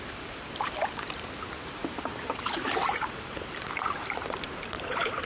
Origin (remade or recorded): remade